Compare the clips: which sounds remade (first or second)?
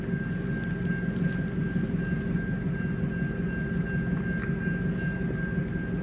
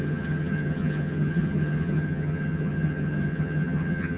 second